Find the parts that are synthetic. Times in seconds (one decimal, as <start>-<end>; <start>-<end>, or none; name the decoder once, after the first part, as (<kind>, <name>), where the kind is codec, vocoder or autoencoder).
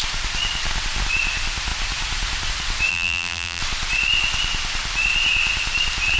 2.9-3.6 (vocoder, BigVGAN v2)